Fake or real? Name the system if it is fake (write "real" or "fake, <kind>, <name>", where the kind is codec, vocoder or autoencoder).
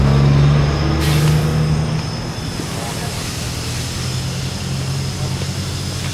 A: real